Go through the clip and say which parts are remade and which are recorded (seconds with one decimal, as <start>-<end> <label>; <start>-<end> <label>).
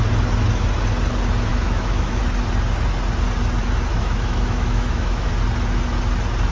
0.0-1.5 recorded; 1.5-2.2 remade; 2.2-3.9 recorded; 3.9-5.3 remade; 5.3-6.5 recorded